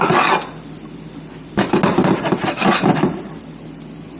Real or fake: real